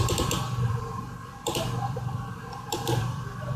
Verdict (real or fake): fake